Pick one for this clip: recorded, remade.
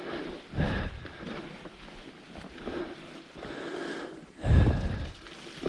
recorded